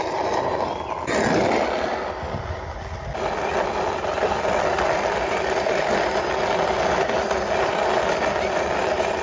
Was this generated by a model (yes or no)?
no